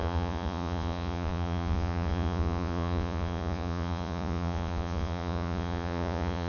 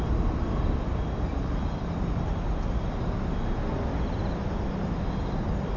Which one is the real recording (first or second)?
second